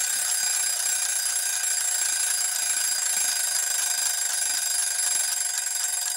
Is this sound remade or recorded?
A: recorded